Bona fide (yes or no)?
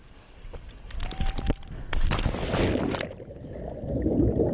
yes